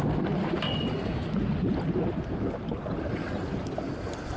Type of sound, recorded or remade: recorded